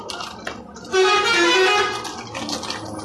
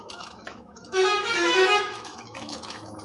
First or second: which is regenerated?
second